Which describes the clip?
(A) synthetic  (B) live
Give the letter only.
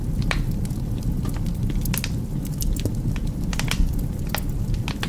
B